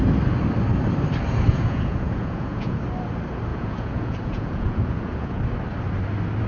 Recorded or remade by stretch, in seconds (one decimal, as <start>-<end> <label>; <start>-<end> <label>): 0.0-1.5 recorded; 1.5-2.8 remade; 2.8-3.5 recorded; 3.5-5.4 remade; 5.4-6.5 recorded